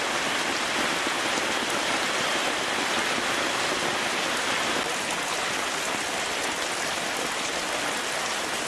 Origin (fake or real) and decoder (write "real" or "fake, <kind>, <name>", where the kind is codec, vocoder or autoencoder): real